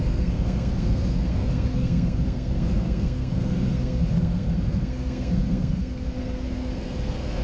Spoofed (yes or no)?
yes